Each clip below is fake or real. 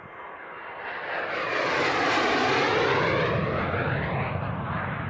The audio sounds real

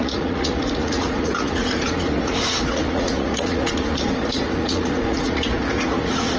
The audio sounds fake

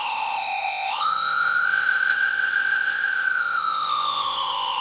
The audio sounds fake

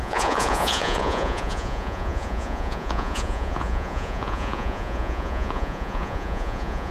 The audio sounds fake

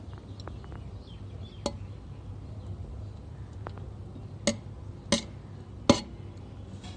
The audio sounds real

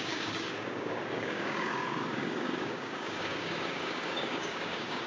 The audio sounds fake